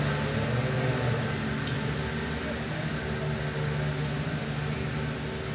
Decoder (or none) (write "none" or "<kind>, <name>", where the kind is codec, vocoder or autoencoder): none